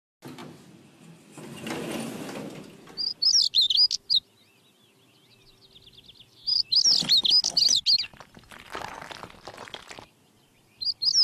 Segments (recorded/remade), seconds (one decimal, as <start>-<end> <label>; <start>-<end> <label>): 0.0-11.2 recorded